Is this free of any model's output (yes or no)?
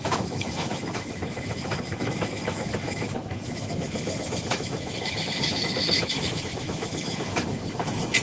no